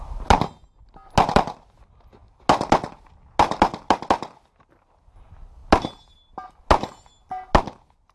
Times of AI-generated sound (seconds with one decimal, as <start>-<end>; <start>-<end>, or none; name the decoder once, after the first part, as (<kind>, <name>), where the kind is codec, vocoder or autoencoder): none